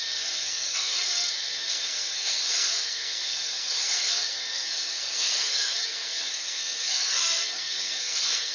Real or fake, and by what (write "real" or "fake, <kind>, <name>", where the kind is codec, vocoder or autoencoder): fake, codec, SNAC